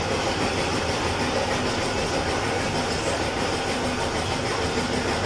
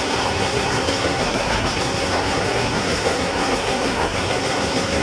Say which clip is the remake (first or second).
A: second